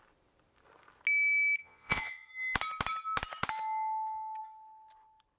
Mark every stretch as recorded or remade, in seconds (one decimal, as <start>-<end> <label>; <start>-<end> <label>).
0.0-1.6 recorded; 1.6-2.3 remade; 2.3-5.4 recorded